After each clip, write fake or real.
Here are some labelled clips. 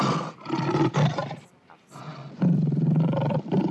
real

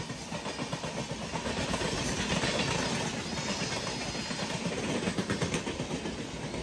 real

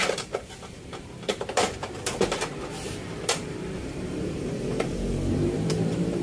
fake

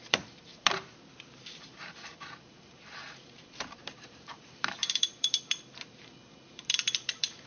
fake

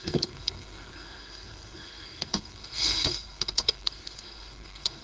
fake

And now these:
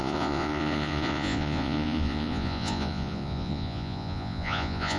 fake